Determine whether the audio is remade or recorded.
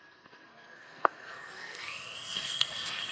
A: remade